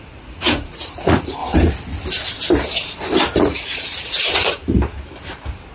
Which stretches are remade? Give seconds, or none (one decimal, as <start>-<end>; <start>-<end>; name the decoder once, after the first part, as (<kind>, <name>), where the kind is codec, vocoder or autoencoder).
0.0-1.4 (vocoder, Vocos); 3.4-4.6